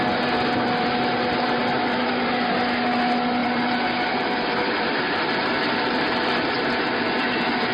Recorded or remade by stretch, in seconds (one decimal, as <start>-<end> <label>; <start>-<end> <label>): 0.0-3.4 recorded; 3.4-6.6 remade; 6.6-7.7 recorded